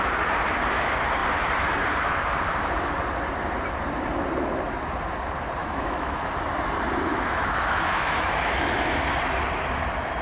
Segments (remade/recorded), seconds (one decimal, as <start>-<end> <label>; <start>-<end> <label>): 0.0-5.6 recorded; 5.6-6.3 remade; 6.3-7.1 recorded; 7.1-9.0 remade; 9.0-10.2 recorded